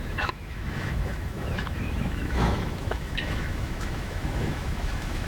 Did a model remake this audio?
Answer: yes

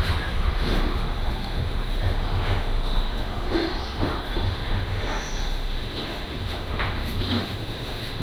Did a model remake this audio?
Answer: yes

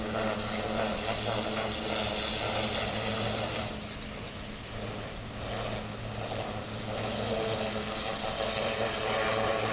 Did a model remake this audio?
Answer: no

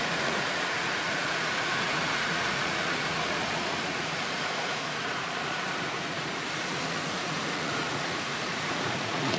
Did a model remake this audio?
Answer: yes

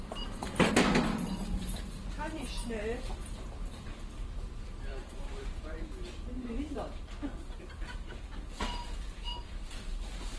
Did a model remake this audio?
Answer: yes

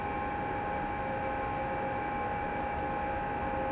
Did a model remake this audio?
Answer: no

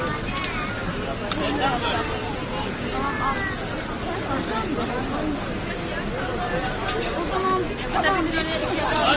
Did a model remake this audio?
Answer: no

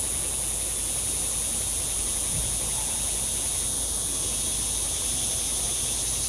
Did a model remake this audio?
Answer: no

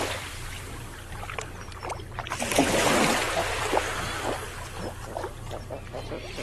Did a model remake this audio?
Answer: no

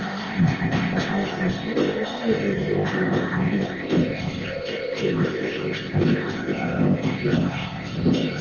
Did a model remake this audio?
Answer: yes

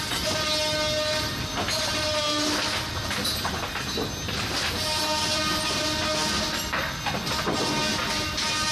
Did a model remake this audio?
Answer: no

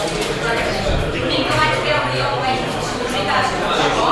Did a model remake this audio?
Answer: yes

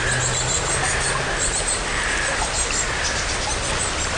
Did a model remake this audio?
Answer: no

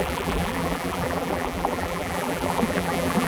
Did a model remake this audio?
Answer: yes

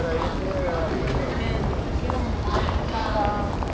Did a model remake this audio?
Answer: no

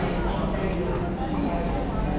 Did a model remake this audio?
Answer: no